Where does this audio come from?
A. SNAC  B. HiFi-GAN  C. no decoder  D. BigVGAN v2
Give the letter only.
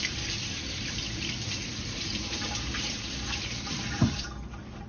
D